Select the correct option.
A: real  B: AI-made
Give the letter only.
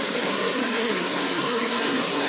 B